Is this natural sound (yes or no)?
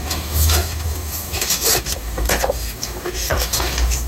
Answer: no